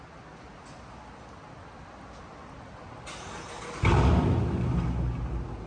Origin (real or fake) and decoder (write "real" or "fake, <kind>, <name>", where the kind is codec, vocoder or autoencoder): real